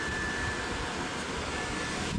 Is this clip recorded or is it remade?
recorded